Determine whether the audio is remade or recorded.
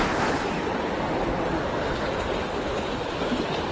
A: recorded